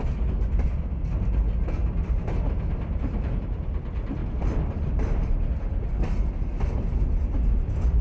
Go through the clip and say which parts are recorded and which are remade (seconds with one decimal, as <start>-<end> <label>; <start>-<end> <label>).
0.0-1.8 recorded; 1.8-3.3 remade; 3.3-4.2 recorded; 4.2-5.5 remade; 5.5-8.0 recorded